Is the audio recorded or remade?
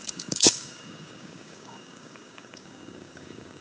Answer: remade